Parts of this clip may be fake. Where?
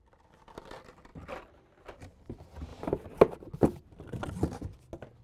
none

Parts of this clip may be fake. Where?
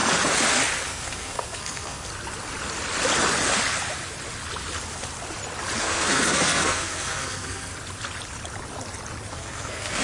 0.9-2.1 (codec, SNAC); 5.8-7.7; 9.3-10.0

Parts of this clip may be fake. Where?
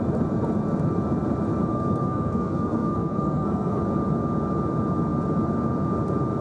1.7-3.8 (codec, SNAC)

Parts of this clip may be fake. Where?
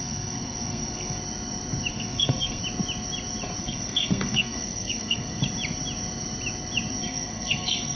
0.0-1.2 (codec, SNAC); 1.9-2.6; 3.6-5.4; 7.0-8.0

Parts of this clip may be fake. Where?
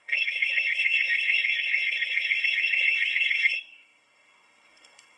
0.0-5.2 (codec, SNAC)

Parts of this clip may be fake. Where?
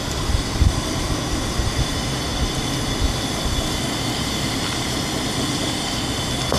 none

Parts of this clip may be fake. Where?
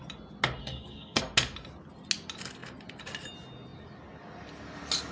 0.6-1.2 (codec, SNAC)